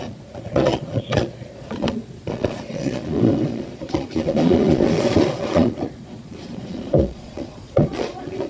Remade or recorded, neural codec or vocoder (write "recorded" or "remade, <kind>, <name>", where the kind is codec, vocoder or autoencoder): remade, vocoder, Vocos